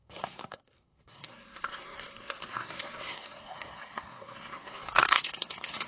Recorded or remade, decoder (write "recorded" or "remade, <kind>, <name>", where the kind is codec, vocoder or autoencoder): remade, codec, SNAC